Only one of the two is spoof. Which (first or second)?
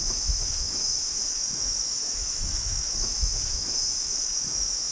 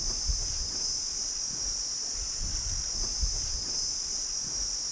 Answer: first